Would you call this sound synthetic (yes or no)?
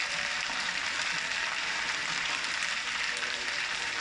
yes